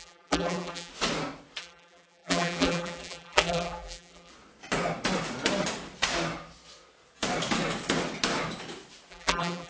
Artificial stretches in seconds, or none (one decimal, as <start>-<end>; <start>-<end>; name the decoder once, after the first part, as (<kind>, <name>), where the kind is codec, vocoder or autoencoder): 0.0-0.9 (vocoder, BigVGAN v2); 1.6-4.3; 9.1-9.7